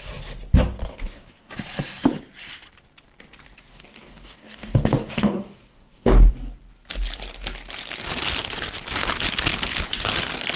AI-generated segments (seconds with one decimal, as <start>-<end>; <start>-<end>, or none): 0.9-1.5; 3.7-6.3